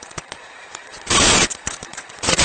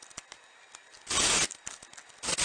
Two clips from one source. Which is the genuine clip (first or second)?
second